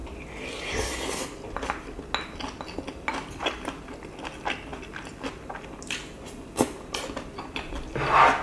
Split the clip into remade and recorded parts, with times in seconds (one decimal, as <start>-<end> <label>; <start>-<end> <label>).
0.0-8.4 recorded